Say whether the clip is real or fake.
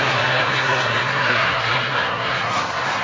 fake